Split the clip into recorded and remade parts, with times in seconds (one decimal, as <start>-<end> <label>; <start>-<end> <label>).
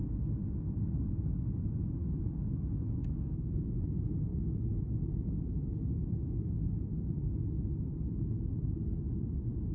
0.0-2.0 recorded; 2.0-3.8 remade; 3.8-4.3 recorded; 4.3-7.0 remade; 7.0-9.7 recorded